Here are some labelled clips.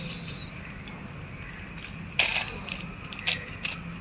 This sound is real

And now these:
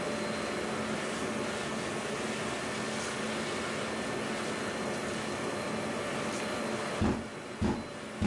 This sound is real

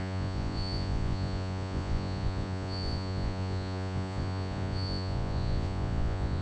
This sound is fake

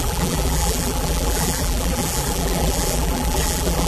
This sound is fake